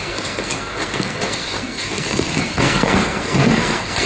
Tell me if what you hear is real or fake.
fake